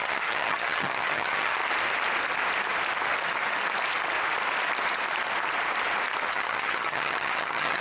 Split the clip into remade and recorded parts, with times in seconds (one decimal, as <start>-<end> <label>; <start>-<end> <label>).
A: 0.0-1.6 remade; 1.6-6.3 recorded; 6.3-7.8 remade